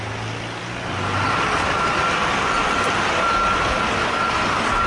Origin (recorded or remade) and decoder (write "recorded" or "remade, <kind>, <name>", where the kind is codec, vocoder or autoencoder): recorded